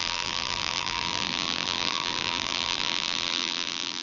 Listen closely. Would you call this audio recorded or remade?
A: remade